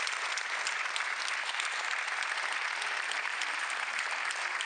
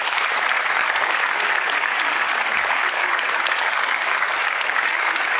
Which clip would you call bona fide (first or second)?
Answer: first